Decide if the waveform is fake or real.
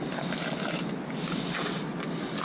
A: real